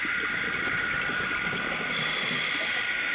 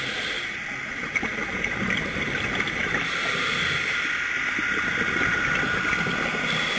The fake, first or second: first